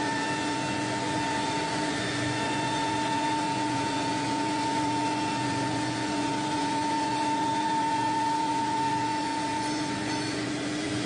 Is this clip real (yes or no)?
no